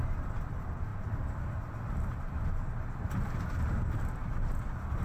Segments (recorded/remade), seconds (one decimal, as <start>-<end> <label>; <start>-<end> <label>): 0.0-0.9 recorded; 0.9-2.5 remade; 2.5-5.0 recorded